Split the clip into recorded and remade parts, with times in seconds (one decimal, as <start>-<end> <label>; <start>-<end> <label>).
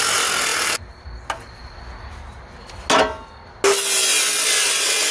0.0-5.1 recorded